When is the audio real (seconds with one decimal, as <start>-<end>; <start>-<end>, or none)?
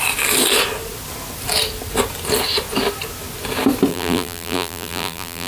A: 0.0-3.9